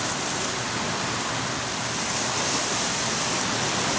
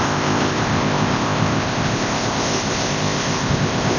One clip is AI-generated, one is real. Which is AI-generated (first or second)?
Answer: second